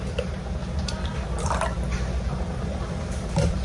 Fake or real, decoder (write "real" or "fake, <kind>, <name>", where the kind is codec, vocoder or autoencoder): fake, vocoder, BigVGAN v2